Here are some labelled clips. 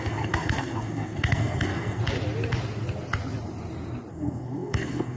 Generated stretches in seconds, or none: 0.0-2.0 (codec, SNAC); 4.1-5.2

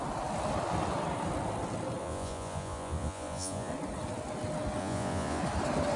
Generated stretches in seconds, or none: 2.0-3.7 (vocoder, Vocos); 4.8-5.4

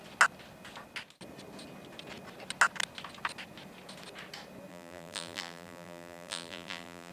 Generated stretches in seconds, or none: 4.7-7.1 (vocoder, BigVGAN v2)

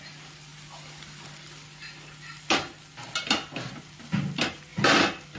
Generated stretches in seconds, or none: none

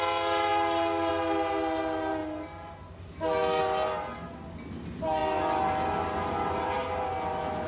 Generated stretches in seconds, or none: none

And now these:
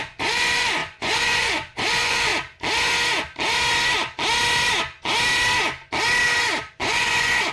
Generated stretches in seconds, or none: 0.0-2.3 (vocoder, Vocos); 6.8-7.5

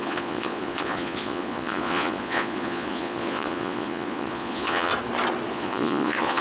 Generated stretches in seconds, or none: 0.0-4.9 (vocoder, Vocos); 5.5-6.4

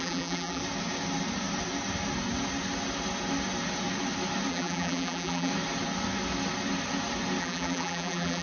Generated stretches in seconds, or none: 0.0-0.6 (vocoder, BigVGAN v2); 4.5-5.5; 7.4-8.4